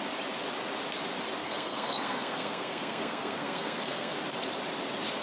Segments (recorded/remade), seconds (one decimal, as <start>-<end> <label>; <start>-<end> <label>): 0.0-1.4 recorded; 1.4-4.1 remade; 4.1-5.2 recorded